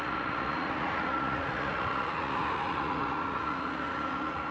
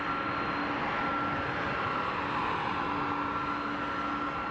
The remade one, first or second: first